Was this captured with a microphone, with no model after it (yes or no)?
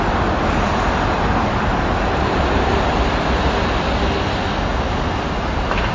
yes